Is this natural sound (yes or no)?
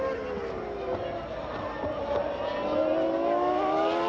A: yes